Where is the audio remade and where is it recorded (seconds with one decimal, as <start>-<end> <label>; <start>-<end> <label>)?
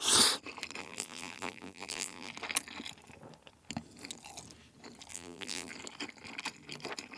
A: 0.0-0.8 recorded; 0.8-2.3 remade; 2.3-5.1 recorded; 5.1-5.7 remade; 5.7-7.2 recorded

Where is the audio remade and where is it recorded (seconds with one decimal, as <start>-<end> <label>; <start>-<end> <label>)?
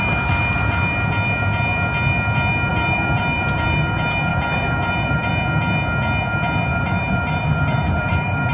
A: 0.0-2.7 recorded; 2.7-3.9 remade; 3.9-4.3 recorded; 4.3-5.3 remade; 5.3-6.7 recorded; 6.7-8.5 remade